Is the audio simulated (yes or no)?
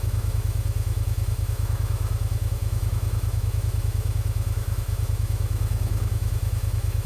yes